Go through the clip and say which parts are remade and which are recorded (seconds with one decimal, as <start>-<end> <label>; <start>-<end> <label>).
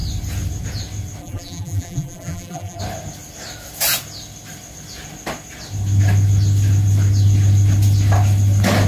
0.0-1.2 recorded; 1.2-2.8 remade; 2.8-8.9 recorded